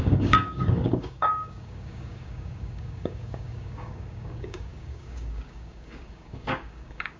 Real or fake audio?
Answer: fake